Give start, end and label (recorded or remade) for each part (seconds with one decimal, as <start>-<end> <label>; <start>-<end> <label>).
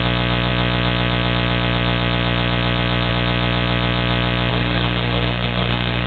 0.0-4.5 recorded; 4.5-6.1 remade